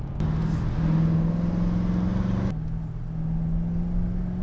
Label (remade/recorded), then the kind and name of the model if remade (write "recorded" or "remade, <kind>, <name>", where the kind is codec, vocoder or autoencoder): recorded